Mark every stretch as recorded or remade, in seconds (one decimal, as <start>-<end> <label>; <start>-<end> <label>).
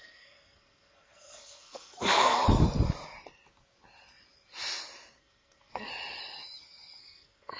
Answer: 0.0-2.4 remade; 2.4-5.2 recorded; 5.2-5.9 remade; 5.9-7.0 recorded; 7.0-7.6 remade